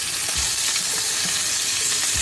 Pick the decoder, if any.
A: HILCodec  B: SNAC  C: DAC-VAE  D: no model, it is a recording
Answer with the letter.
D